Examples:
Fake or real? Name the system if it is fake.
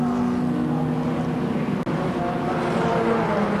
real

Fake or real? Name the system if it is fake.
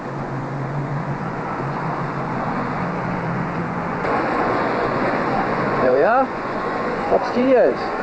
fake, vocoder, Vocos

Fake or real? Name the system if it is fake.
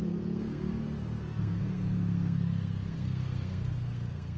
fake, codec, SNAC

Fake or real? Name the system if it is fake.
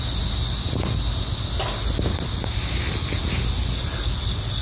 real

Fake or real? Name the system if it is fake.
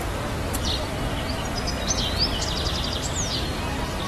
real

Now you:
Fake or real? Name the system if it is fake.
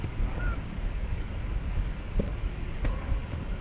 fake, codec, DAC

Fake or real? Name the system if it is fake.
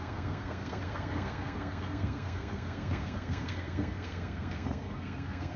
fake, codec, SNAC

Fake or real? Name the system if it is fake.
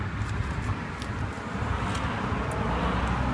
real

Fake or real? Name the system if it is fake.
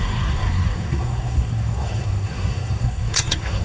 fake, codec, SNAC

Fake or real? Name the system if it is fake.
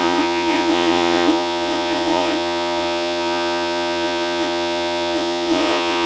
fake, vocoder, Vocos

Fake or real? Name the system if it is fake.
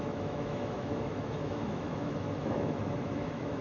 fake, autoencoder, DAC-VAE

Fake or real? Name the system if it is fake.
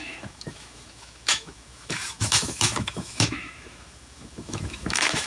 fake, autoencoder, DAC-VAE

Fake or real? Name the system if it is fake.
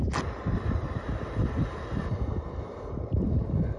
real